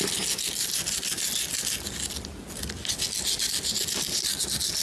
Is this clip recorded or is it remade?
recorded